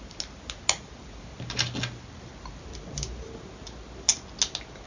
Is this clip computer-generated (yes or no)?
no